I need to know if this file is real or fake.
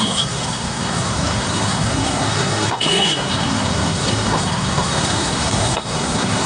fake